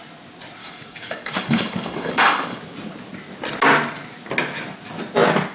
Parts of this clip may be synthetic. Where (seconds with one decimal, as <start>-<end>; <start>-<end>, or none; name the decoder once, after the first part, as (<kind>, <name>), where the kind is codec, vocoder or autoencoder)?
0.6-2.6 (codec, DAC)